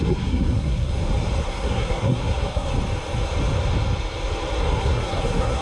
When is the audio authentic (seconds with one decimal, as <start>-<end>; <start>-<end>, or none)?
0.9-1.4; 2.7-4.6